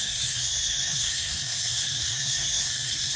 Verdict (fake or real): fake